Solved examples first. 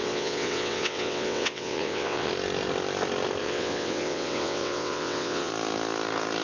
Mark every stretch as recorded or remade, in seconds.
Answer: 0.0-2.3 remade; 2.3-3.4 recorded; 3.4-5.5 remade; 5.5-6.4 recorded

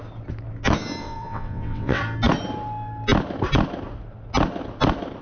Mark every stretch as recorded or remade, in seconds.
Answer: 0.0-1.0 recorded; 1.0-2.0 remade; 2.0-5.2 recorded

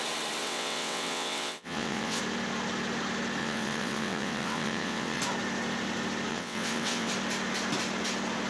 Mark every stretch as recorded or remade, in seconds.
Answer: 0.0-0.4 recorded; 0.4-2.2 remade; 2.2-3.4 recorded; 3.4-5.2 remade; 5.2-6.3 recorded; 6.3-7.1 remade; 7.1-8.5 recorded

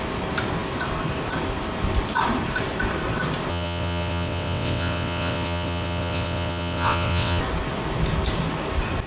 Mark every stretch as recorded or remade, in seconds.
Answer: 0.0-3.5 recorded; 3.5-7.4 remade; 7.4-9.1 recorded

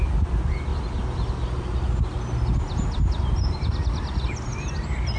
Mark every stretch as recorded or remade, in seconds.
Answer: 0.0-5.2 recorded

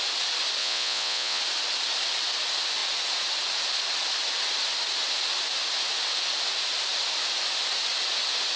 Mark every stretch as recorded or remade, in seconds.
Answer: 0.0-0.6 recorded; 0.6-1.4 remade; 1.4-8.6 recorded

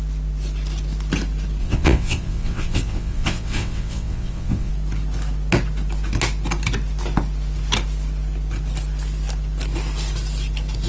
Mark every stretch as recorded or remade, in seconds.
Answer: 0.0-1.6 recorded; 1.6-4.7 remade; 4.7-10.9 recorded